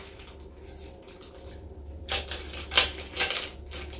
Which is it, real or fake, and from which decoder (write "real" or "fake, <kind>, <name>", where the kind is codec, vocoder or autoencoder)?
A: real